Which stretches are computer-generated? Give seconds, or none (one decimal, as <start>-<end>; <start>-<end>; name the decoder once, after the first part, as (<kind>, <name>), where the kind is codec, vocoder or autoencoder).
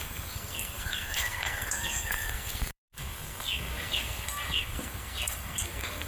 0.0-6.1 (codec, SNAC)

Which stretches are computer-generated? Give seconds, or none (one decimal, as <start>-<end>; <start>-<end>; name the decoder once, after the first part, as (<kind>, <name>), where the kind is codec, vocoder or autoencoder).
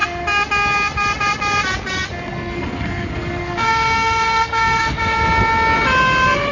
2.3-5.0 (codec, SNAC)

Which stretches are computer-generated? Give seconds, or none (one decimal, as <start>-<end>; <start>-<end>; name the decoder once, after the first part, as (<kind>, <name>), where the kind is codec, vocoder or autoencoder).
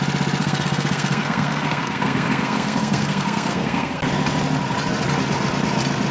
0.4-4.1 (codec, SNAC)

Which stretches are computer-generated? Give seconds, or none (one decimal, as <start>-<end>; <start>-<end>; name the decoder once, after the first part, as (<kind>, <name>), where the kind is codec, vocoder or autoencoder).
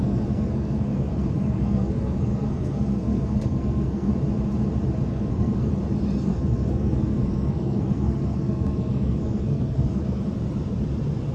0.0-4.1 (codec, SNAC); 5.1-5.7; 6.3-10.2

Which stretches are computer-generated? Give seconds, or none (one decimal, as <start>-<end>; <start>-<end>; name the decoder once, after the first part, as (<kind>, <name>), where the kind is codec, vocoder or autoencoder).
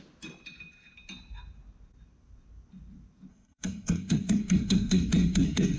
3.3-5.8 (codec, SNAC)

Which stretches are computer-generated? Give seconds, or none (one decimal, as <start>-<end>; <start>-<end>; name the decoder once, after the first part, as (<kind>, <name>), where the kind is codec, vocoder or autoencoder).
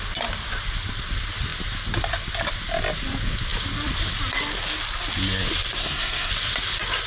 5.8-6.3 (codec, SNAC)